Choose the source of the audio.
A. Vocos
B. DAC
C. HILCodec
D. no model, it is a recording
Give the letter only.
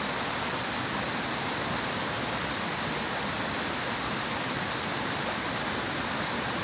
D